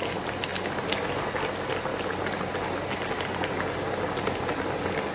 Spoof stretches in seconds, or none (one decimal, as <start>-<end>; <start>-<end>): none